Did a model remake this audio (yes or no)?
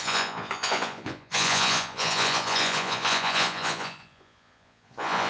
yes